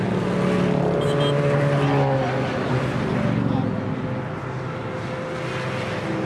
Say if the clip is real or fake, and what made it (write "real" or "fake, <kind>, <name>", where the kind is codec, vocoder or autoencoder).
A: real